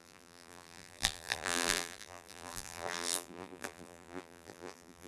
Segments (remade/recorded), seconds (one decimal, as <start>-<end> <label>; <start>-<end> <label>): 0.0-5.1 remade